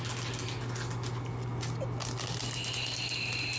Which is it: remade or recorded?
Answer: recorded